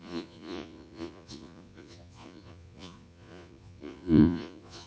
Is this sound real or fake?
fake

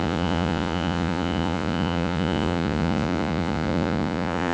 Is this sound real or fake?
fake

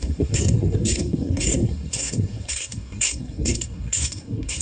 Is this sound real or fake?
fake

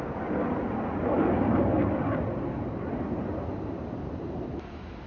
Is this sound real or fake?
real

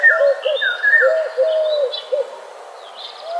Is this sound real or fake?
real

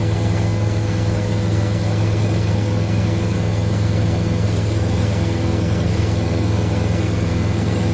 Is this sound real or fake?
fake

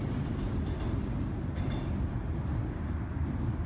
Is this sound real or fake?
real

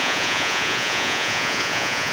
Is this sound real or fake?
fake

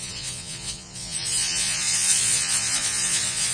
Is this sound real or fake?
fake